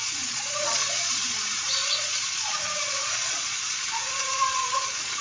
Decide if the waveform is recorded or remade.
remade